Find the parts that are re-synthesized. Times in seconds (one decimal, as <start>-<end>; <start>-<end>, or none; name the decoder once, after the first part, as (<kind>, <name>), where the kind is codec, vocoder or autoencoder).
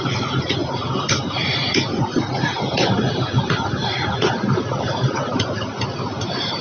none